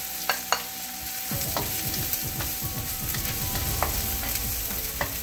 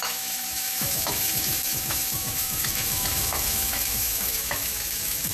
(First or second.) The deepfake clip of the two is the second